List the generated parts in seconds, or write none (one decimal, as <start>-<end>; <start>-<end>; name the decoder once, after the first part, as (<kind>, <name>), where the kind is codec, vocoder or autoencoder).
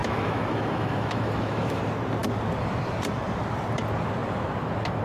0.0-1.8 (autoencoder, DAC-VAE)